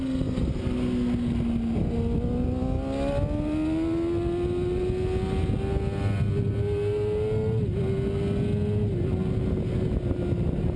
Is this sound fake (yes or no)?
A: no